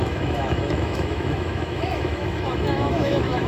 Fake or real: fake